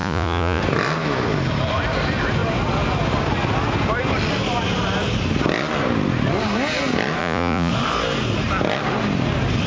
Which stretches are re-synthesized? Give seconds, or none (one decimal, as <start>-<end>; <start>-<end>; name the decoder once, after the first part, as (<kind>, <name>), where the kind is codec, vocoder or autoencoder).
0.0-0.6 (vocoder, Vocos); 7.2-7.7